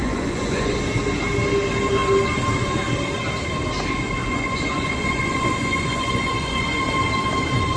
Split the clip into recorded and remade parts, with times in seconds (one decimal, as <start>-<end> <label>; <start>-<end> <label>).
0.0-0.8 remade; 0.8-4.2 recorded; 4.2-6.8 remade; 6.8-7.8 recorded